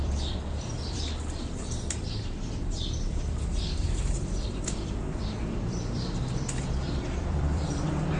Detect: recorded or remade remade